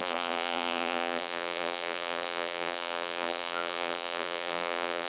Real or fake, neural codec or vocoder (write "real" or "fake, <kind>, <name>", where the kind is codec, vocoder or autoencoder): fake, vocoder, BigVGAN v2